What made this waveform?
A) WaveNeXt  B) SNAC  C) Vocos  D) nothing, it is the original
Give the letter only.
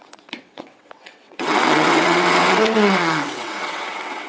A